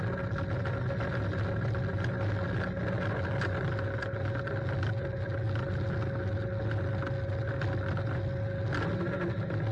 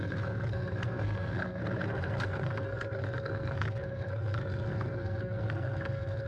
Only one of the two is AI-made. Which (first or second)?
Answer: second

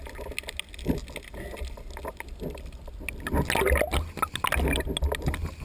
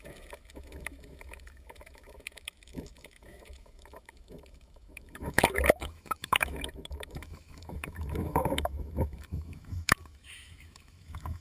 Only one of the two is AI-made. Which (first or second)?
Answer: second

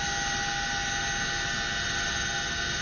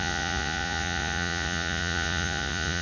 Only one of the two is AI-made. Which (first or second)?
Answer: second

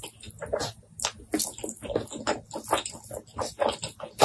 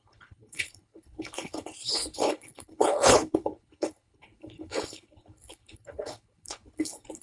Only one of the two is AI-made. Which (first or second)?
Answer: second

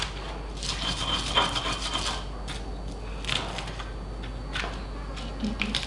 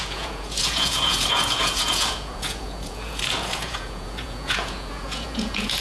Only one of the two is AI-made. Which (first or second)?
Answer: second